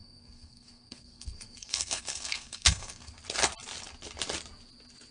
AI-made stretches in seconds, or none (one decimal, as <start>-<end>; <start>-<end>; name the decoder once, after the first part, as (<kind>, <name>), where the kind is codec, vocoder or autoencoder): 0.0-3.1 (codec, SNAC)

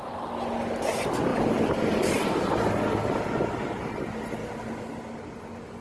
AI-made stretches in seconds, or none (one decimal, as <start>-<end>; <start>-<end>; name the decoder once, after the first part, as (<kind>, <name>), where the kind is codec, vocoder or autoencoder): none

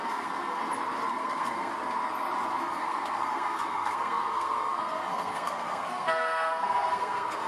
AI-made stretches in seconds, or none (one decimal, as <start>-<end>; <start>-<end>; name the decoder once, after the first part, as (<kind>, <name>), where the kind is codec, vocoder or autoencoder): 0.0-0.6 (codec, SNAC); 1.1-1.7; 2.6-7.5

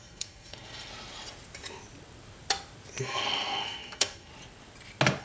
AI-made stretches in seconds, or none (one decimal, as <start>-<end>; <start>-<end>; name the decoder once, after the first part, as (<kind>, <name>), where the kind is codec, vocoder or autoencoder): 0.0-0.9 (codec, SNAC); 3.0-4.3